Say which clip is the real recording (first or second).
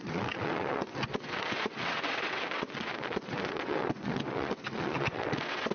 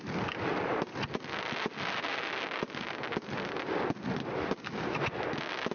second